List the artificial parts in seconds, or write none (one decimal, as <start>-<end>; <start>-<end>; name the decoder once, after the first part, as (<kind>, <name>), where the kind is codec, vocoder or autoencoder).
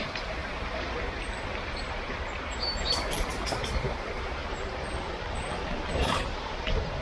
0.0-4.4 (vocoder, BigVGAN v2); 5.9-7.0